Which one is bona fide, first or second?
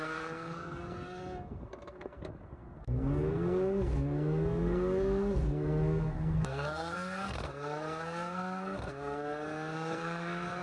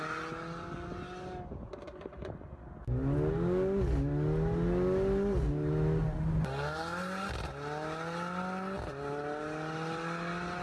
second